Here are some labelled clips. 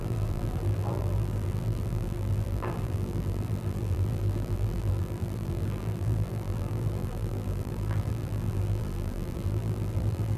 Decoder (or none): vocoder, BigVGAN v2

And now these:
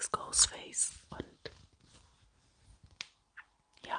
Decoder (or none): none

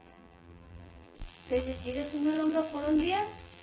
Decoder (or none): vocoder, BigVGAN v2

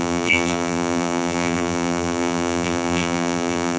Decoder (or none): vocoder, BigVGAN v2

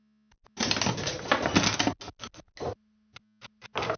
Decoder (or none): none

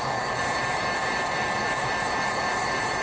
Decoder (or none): vocoder, BigVGAN v2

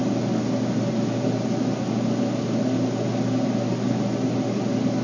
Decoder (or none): none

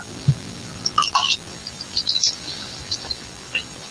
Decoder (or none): vocoder, BigVGAN v2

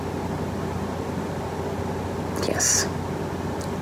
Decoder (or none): none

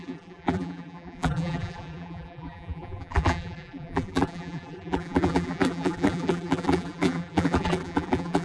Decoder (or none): vocoder, BigVGAN v2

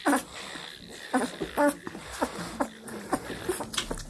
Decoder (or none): none